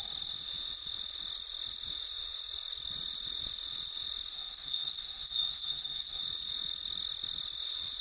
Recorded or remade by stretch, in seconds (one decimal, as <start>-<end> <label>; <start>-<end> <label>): 0.0-4.3 recorded; 4.3-6.2 remade; 6.2-8.0 recorded